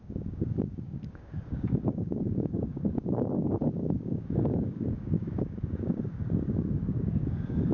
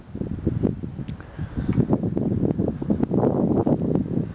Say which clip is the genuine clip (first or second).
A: second